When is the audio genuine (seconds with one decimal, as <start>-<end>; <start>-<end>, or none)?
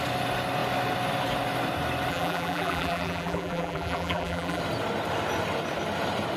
0.0-2.1; 4.6-6.4